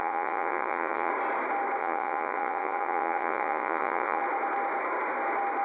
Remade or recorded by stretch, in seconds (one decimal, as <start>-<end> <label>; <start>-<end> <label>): 0.0-1.1 remade; 1.1-1.8 recorded; 1.8-4.2 remade; 4.2-5.6 recorded